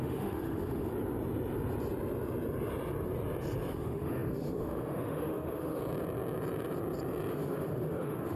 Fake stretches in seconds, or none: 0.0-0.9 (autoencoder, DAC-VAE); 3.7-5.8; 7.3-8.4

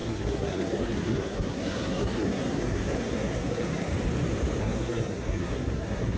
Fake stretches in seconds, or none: 0.0-3.9 (codec, SNAC); 4.6-6.2

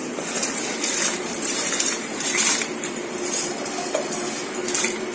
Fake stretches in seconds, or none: 0.0-3.1 (vocoder, BigVGAN v2)

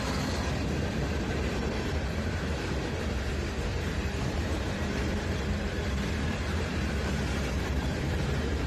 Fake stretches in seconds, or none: 3.7-8.0 (vocoder, BigVGAN v2)

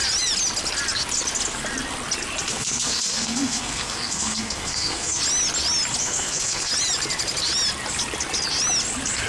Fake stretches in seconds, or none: 2.5-5.2 (codec, SNAC); 6.0-6.7